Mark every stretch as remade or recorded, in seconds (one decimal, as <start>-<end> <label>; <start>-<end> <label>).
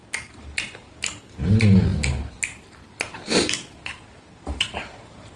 0.0-5.4 recorded